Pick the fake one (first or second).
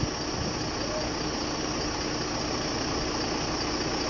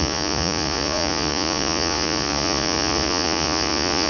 second